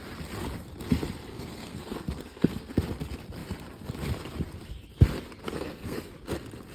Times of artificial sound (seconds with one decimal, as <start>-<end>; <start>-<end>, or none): 1.3-2.8; 5.4-6.1